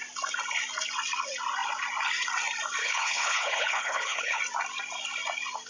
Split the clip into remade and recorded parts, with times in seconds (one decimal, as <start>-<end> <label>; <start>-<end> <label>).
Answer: 0.0-2.8 recorded; 2.8-4.4 remade; 4.4-5.7 recorded

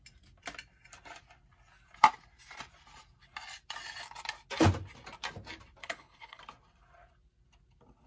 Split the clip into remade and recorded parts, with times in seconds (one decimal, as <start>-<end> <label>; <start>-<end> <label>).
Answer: 0.0-5.8 recorded; 5.8-6.4 remade; 6.4-8.1 recorded

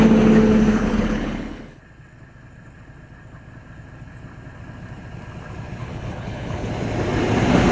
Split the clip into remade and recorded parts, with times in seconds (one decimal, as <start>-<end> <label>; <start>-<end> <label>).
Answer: 0.0-0.7 recorded; 0.7-1.8 remade; 1.8-5.8 recorded; 5.8-6.7 remade; 6.7-7.7 recorded

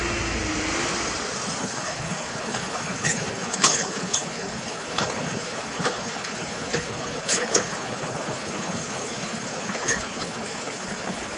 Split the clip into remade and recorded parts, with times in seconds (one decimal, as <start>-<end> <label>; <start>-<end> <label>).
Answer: 0.0-1.6 recorded; 1.6-11.4 remade

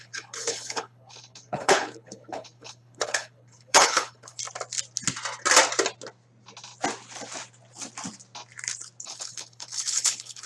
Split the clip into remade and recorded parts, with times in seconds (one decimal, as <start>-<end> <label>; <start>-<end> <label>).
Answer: 0.0-4.4 remade; 4.4-9.0 recorded; 9.0-10.5 remade

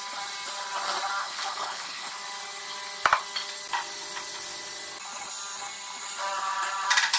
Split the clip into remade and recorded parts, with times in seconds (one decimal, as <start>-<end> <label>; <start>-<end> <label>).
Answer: 0.0-1.2 recorded; 1.2-2.1 remade; 2.1-7.2 recorded